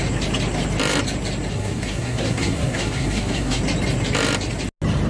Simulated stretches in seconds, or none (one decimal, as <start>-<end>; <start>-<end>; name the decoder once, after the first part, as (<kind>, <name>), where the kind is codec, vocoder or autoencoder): 1.5-3.6 (codec, SNAC)